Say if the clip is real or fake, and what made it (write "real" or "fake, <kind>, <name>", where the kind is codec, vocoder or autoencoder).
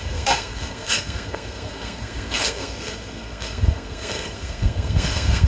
fake, codec, SNAC